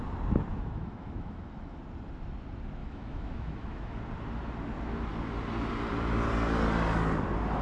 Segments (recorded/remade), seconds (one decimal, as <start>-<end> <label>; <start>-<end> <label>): 0.0-0.5 recorded; 0.5-1.8 remade; 1.8-2.8 recorded; 2.8-4.0 remade; 4.0-7.6 recorded